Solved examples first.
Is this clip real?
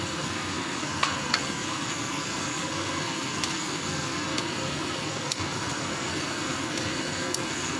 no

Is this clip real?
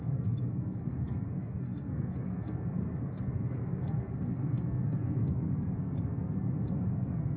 no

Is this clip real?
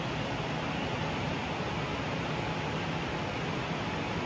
yes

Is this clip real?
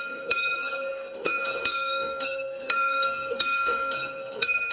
no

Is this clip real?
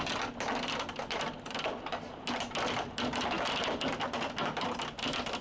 yes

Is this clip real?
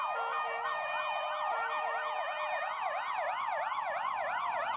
yes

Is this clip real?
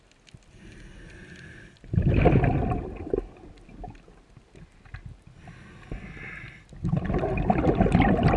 yes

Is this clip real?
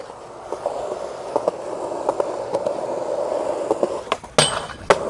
yes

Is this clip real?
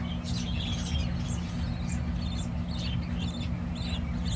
yes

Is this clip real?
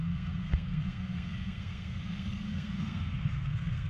no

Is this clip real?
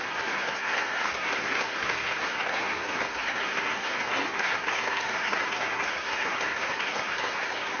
no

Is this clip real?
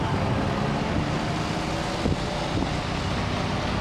yes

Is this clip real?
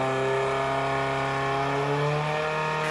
yes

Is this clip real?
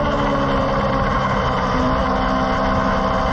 yes